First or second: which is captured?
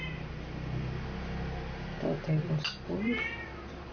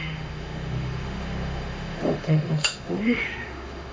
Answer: first